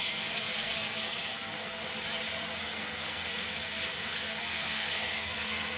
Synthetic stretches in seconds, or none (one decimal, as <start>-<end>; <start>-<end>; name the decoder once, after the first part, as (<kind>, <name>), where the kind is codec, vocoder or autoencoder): 0.0-1.9 (codec, SNAC); 2.6-5.8